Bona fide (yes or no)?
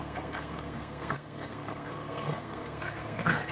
no